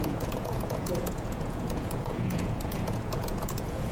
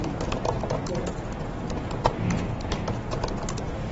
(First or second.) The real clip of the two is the second